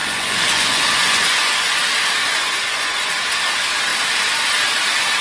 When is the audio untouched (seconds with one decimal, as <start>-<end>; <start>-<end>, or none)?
1.8-2.2; 3.2-5.2